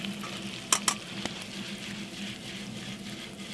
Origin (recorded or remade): recorded